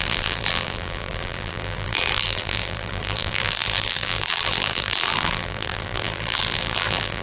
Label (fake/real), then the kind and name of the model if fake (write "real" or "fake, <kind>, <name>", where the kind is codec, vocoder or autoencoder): fake, vocoder, BigVGAN v2